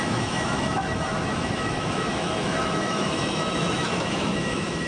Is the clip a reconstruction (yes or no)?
yes